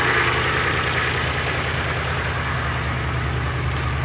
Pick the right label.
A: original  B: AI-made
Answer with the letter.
A